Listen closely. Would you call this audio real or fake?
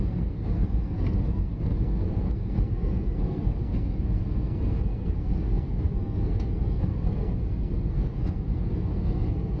fake